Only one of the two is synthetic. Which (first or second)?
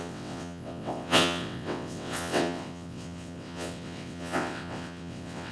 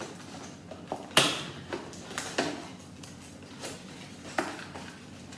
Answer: first